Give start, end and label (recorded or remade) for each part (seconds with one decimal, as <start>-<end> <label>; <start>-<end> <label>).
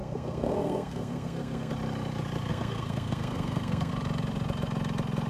0.0-1.7 remade; 1.7-2.5 recorded; 2.5-3.9 remade; 3.9-5.3 recorded